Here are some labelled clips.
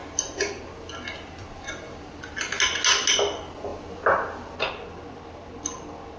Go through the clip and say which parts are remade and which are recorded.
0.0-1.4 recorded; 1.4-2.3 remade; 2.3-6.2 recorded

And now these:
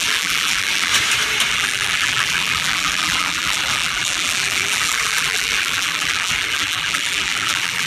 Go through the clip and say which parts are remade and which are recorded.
0.0-0.9 remade; 0.9-1.5 recorded; 1.5-7.9 remade

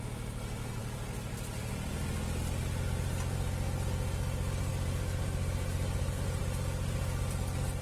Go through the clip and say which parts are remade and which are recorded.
0.0-4.7 recorded; 4.7-6.4 remade; 6.4-7.8 recorded

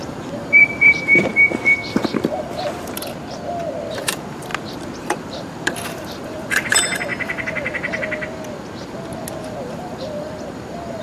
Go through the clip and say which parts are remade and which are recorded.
0.0-1.3 remade; 1.3-3.9 recorded; 3.9-4.5 remade; 4.5-5.0 recorded; 5.0-7.1 remade; 7.1-9.3 recorded; 9.3-11.0 remade

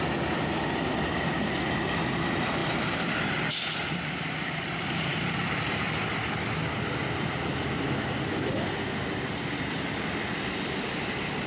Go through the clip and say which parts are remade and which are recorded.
0.0-11.5 recorded

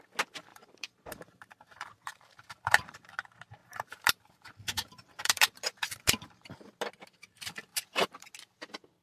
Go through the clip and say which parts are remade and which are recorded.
0.0-0.5 recorded; 0.5-3.2 remade; 3.2-3.6 recorded; 3.6-6.6 remade; 6.6-7.7 recorded; 7.7-8.3 remade; 8.3-9.0 recorded